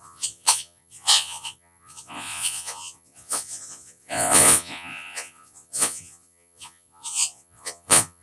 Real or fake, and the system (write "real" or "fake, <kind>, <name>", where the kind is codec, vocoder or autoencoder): fake, vocoder, Vocos